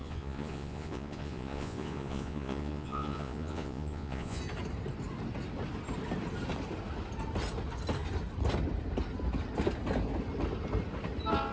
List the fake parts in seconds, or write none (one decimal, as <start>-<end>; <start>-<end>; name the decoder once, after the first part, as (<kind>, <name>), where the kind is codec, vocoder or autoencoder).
0.0-4.4 (vocoder, Vocos)

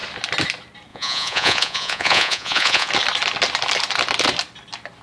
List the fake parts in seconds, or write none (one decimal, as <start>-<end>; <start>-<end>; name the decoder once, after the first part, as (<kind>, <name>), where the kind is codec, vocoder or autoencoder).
0.9-2.9 (vocoder, Vocos)

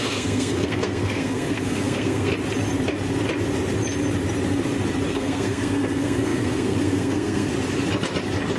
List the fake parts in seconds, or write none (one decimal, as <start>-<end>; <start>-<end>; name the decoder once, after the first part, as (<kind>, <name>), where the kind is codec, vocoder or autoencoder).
0.0-2.3 (codec, SNAC); 5.1-7.5

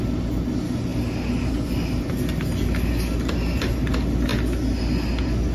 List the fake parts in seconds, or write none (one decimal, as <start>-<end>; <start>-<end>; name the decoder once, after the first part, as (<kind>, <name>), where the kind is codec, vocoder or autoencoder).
none

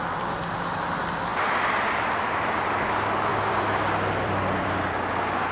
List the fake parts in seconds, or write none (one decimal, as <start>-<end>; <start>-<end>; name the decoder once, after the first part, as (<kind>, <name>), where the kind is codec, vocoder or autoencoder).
1.3-2.6 (vocoder, BigVGAN v2); 3.3-4.9

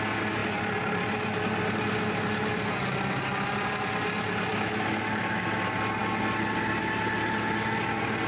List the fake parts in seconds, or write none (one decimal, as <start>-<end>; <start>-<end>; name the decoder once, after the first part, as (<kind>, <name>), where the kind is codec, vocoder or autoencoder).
4.5-5.0 (autoencoder, DAC-VAE)

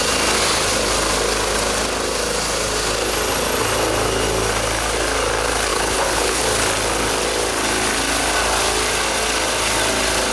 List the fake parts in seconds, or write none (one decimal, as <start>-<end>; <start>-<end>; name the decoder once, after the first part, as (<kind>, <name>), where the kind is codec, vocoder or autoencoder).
5.7-6.4 (codec, HILCodec)

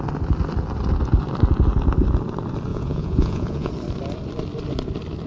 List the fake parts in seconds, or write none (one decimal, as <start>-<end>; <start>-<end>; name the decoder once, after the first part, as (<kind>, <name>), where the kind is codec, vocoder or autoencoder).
2.7-3.7 (vocoder, Vocos)